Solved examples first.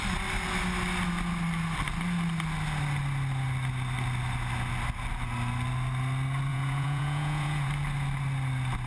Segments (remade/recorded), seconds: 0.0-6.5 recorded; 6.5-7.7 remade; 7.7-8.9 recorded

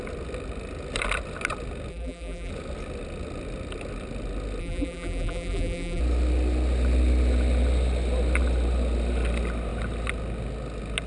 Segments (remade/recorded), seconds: 0.0-1.9 recorded; 1.9-2.5 remade; 2.5-4.6 recorded; 4.6-6.0 remade; 6.0-11.1 recorded

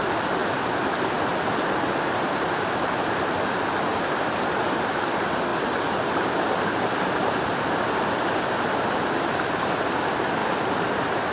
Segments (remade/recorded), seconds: 0.0-5.5 recorded; 5.5-9.9 remade; 9.9-10.4 recorded; 10.4-11.3 remade

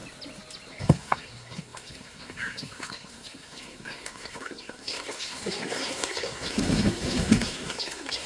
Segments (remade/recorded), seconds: 0.0-0.7 recorded; 0.7-8.3 remade